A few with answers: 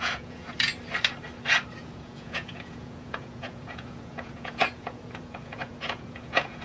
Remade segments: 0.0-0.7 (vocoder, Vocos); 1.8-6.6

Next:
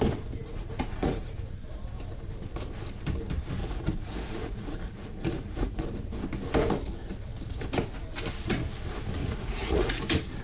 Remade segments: 0.4-1.3 (vocoder, Vocos); 3.6-5.8; 9.2-10.0

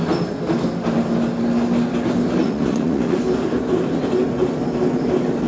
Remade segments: 2.4-3.2 (vocoder, Vocos)

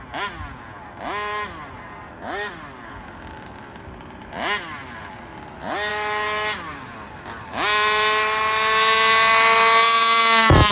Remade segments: none

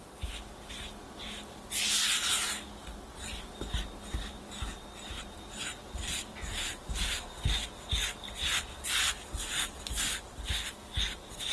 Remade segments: none